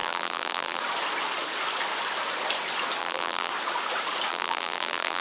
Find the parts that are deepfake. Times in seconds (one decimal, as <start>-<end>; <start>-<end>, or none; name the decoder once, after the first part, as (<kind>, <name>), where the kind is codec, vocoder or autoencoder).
0.0-0.8 (vocoder, BigVGAN v2); 3.0-3.5; 4.3-5.2